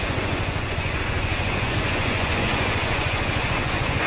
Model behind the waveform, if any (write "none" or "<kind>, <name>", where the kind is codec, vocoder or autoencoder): vocoder, Vocos